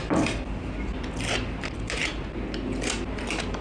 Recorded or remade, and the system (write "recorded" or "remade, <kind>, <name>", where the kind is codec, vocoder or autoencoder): recorded